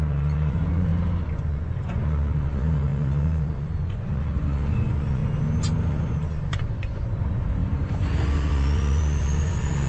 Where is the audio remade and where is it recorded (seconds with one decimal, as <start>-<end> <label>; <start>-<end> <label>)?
0.0-0.9 remade; 0.9-1.4 recorded; 1.4-5.2 remade; 5.2-5.9 recorded; 5.9-9.9 remade